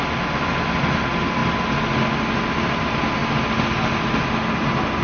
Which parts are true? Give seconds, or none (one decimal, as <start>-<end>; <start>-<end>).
0.0-5.0